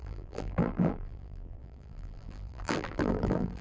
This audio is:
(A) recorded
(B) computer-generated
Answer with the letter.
B